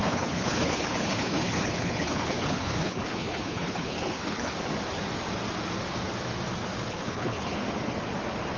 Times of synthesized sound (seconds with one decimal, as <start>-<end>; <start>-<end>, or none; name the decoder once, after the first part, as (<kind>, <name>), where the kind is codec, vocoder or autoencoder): 0.0-4.5 (codec, HILCodec); 6.9-7.6